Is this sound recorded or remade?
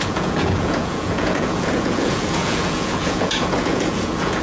remade